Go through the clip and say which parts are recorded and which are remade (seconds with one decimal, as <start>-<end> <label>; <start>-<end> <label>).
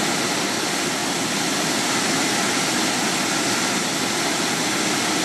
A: 0.0-5.2 recorded